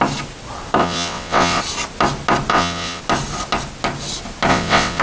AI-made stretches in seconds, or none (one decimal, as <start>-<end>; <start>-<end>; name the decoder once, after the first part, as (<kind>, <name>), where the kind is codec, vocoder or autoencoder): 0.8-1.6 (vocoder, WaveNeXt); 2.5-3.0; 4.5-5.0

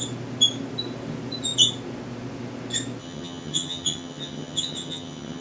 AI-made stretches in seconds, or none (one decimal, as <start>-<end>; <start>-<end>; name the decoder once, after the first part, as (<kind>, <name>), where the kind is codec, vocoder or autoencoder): 3.0-5.4 (vocoder, HiFi-GAN)

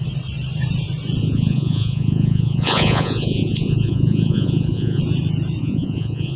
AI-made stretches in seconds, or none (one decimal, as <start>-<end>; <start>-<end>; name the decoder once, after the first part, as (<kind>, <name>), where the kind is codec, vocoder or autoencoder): 1.2-5.0 (vocoder, Vocos); 5.6-6.4